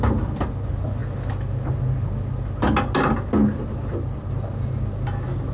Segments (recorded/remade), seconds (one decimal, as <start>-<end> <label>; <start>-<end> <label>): 0.0-3.4 recorded; 3.4-4.3 remade; 4.3-5.5 recorded